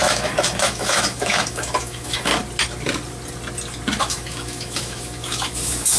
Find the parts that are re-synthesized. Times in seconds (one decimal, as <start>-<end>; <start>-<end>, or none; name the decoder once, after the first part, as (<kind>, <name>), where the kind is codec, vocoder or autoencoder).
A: 0.0-2.3 (autoencoder, DAC-VAE); 4.0-6.0